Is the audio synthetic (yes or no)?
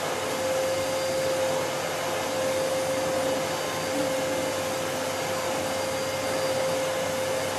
no